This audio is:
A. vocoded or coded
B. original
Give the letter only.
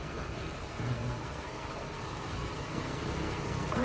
A